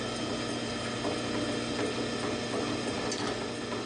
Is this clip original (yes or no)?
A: yes